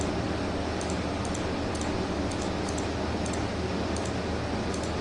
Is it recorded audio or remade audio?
recorded